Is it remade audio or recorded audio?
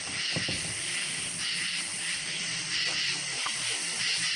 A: recorded